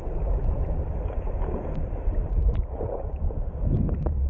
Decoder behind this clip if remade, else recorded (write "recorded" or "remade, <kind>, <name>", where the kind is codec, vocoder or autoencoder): recorded